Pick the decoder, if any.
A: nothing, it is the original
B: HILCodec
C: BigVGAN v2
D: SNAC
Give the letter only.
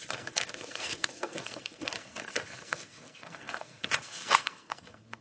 D